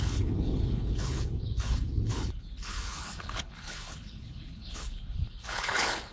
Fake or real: fake